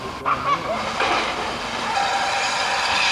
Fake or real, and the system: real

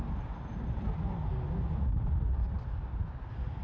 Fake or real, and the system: real